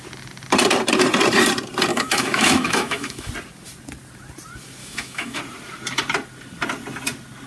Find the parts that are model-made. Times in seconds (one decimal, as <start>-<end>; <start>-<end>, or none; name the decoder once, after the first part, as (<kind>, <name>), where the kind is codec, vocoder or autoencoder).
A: 1.9-3.3 (autoencoder, DAC-VAE); 4.8-5.4

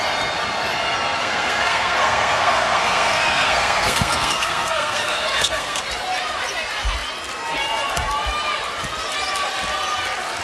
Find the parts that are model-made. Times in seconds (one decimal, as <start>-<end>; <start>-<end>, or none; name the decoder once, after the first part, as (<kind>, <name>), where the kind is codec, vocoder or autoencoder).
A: 1.2-5.8 (codec, SNAC)

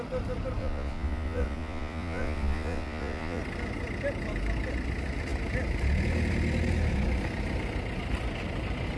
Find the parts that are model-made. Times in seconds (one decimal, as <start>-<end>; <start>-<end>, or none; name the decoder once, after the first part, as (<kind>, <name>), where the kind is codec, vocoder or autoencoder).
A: 0.6-3.4 (vocoder, Vocos)

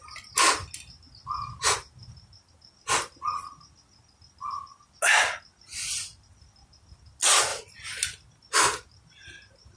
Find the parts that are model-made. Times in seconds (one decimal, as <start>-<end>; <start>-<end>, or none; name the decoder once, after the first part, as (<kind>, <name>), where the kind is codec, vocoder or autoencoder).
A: none

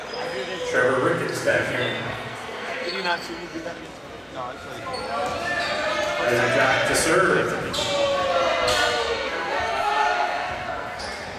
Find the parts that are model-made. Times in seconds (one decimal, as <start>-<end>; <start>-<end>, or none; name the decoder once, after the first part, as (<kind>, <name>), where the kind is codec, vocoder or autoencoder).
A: 1.3-3.8 (codec, SNAC); 8.7-11.0

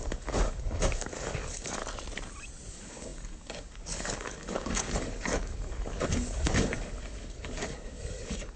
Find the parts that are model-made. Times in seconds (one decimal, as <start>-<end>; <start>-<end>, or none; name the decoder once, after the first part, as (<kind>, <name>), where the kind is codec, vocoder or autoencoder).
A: 0.0-1.8 (codec, DAC); 2.7-8.6

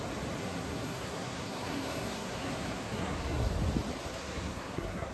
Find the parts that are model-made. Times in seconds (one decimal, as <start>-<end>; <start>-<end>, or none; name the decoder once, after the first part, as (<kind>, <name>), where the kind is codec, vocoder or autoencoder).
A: 0.4-3.5 (codec, SNAC); 4.1-5.1

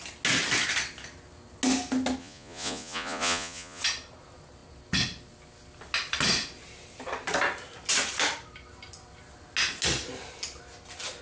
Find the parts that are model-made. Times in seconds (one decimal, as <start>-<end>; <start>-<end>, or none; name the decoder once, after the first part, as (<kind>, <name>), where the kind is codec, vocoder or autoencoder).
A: 2.2-3.8 (vocoder, Vocos)